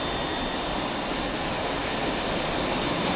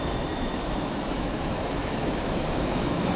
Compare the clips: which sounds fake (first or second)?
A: second